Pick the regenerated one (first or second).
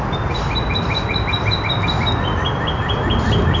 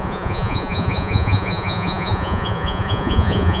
second